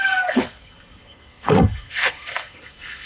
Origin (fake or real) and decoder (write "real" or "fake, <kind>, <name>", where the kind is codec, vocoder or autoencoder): fake, codec, SNAC